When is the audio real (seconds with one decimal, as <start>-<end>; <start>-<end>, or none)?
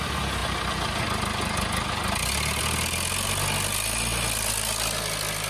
0.0-5.5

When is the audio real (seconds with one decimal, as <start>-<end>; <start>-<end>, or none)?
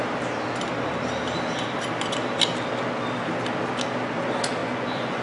0.0-4.6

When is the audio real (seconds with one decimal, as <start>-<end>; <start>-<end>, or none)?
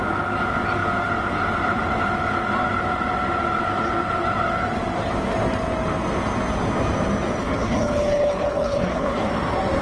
0.0-7.4; 9.3-9.8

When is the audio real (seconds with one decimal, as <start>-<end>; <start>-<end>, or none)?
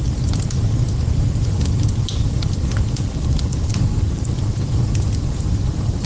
0.0-6.1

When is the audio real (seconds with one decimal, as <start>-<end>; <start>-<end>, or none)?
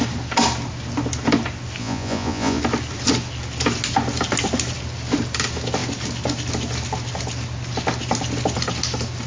0.0-1.8; 2.6-9.3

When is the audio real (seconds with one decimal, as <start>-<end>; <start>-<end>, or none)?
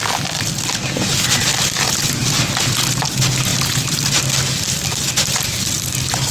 0.0-6.3